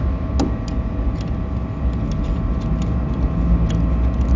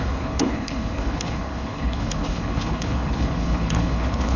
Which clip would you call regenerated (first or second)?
second